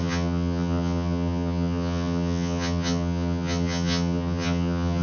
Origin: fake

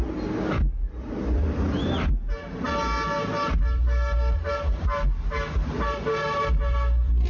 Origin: real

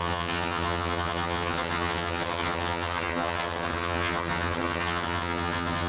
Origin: fake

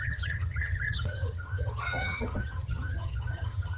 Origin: fake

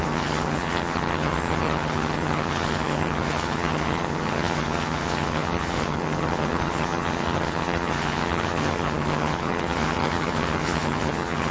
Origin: fake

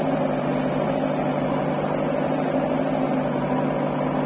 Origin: real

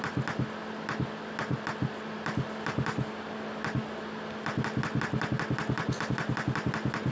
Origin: real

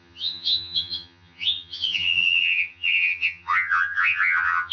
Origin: fake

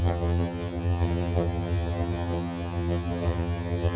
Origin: fake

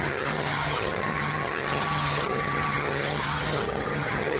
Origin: fake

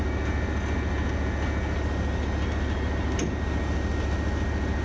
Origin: real